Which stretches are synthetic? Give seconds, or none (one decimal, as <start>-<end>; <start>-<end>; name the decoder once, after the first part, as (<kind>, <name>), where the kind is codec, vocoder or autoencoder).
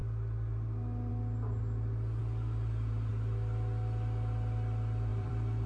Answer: 0.0-1.1 (vocoder, BigVGAN v2); 2.2-3.1; 5.1-5.7